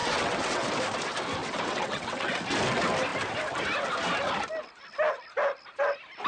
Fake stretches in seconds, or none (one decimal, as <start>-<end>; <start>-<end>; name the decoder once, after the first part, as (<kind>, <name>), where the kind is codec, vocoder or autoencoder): 0.0-0.7 (vocoder, WaveNeXt); 1.4-2.4